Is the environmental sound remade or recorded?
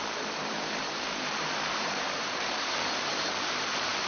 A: remade